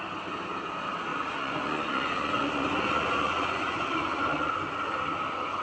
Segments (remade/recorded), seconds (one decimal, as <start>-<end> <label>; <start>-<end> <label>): 0.0-1.1 recorded; 1.1-4.5 remade; 4.5-5.6 recorded